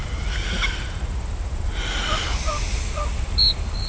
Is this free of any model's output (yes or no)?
yes